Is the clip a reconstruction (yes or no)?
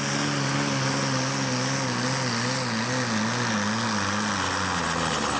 no